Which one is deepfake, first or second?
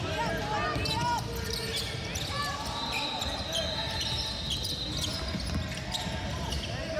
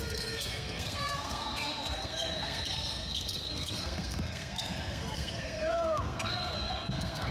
second